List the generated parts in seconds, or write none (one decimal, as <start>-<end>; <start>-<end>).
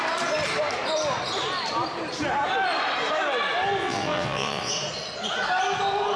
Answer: 3.8-4.7